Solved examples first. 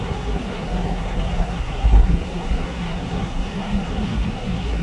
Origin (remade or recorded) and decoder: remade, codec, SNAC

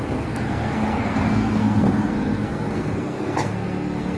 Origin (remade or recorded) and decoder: remade, codec, SNAC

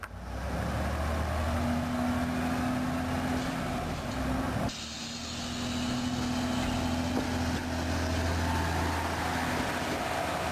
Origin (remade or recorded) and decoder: recorded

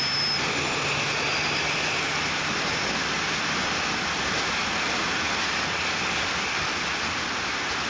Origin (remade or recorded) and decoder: recorded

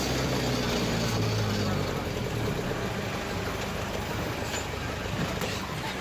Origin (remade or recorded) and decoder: recorded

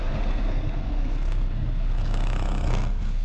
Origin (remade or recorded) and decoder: remade, codec, SNAC